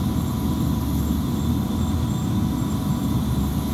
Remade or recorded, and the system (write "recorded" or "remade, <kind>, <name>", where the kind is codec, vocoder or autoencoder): recorded